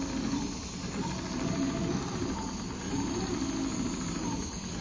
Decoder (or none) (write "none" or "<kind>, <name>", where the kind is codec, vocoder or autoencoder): none